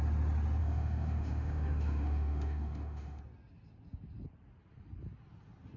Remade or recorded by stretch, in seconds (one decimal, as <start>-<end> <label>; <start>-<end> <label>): 0.0-0.6 recorded; 0.6-3.2 remade; 3.2-5.8 recorded